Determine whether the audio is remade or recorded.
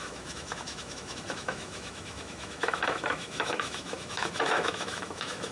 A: remade